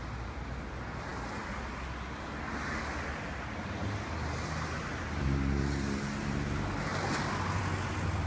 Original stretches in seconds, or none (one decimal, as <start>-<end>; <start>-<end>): 0.0-8.3